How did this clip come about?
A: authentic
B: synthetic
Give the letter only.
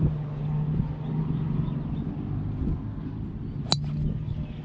A